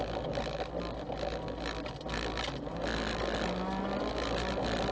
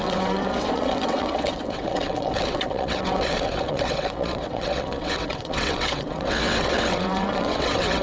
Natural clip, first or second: first